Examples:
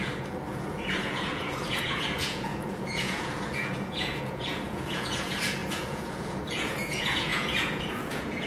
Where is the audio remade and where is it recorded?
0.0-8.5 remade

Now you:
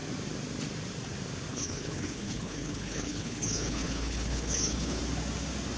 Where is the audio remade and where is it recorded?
0.0-1.5 recorded; 1.5-5.0 remade; 5.0-5.8 recorded

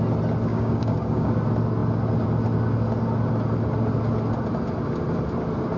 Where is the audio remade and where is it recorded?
0.0-0.5 recorded; 0.5-1.3 remade; 1.3-5.8 recorded

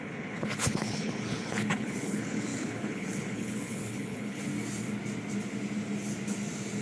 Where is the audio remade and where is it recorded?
0.0-4.5 remade; 4.5-6.8 recorded

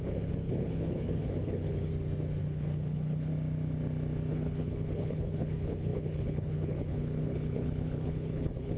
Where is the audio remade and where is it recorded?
0.0-1.9 remade; 1.9-2.4 recorded; 2.4-3.3 remade; 3.3-4.3 recorded; 4.3-8.8 remade